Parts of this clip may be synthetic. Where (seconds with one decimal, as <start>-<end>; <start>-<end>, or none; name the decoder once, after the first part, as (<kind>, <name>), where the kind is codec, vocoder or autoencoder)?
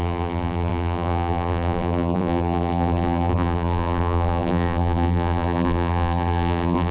0.0-6.9 (vocoder, BigVGAN v2)